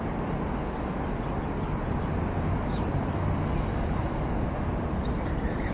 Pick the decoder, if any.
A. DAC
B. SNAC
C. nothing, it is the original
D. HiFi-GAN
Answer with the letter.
C